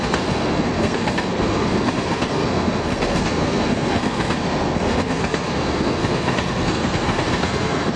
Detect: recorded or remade remade